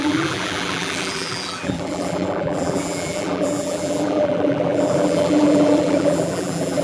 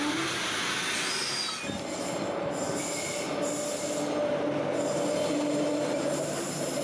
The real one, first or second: second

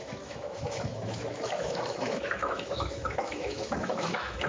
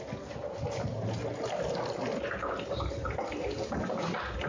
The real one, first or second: second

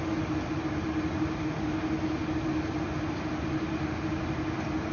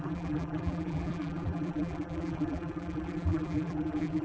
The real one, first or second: first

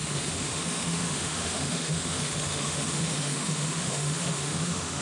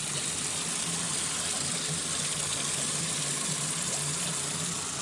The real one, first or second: second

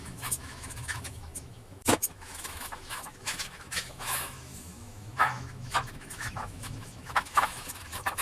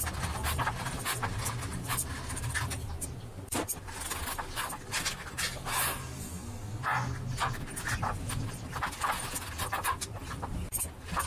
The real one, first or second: second